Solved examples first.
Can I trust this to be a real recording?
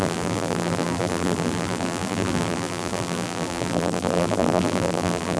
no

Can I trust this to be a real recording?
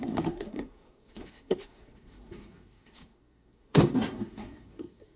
no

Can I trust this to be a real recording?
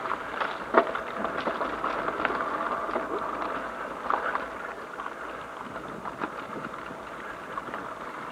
yes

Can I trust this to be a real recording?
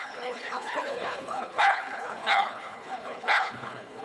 no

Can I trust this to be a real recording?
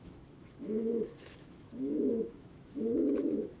no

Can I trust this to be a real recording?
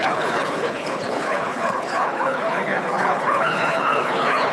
no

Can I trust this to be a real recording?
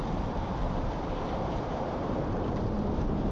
no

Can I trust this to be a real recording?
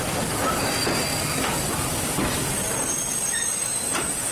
yes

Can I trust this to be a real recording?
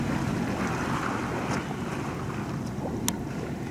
yes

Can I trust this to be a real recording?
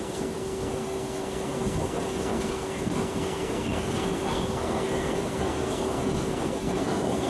no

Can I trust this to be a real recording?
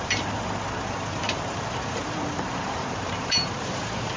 no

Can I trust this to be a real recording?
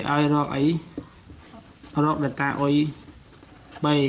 no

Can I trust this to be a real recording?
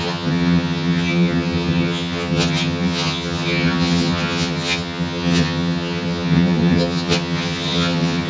no